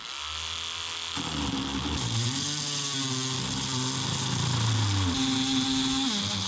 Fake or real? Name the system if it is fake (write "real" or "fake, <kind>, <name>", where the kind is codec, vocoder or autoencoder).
real